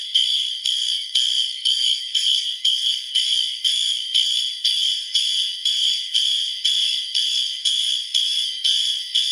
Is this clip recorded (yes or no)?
no